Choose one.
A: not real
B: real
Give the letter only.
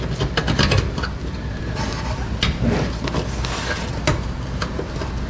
B